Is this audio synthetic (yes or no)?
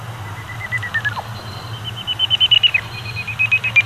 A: no